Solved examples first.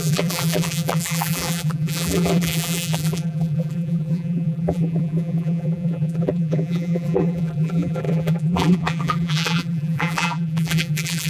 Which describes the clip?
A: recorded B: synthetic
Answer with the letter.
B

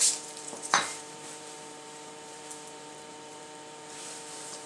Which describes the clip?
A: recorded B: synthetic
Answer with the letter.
B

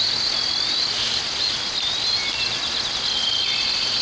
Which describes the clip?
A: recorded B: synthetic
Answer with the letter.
A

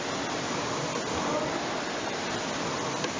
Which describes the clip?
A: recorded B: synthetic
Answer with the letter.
B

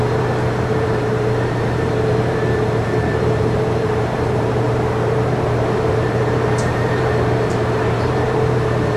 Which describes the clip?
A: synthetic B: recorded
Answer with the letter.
A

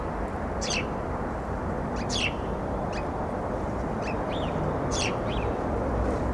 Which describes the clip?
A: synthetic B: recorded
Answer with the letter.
A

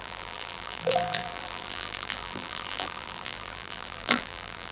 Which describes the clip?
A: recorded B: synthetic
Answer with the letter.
B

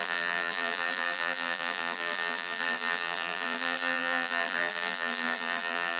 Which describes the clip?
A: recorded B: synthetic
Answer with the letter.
B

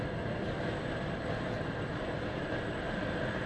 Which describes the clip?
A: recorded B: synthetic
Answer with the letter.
A